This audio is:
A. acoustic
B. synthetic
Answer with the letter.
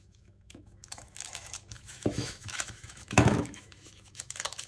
B